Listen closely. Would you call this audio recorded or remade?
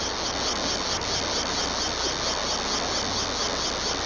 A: recorded